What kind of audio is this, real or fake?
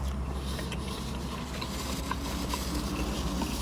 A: real